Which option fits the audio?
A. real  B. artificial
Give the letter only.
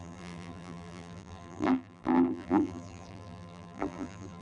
B